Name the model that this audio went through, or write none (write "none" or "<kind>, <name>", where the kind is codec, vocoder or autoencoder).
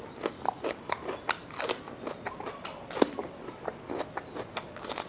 none